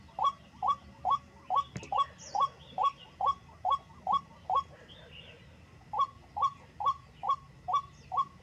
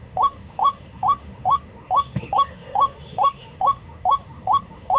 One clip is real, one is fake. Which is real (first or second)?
first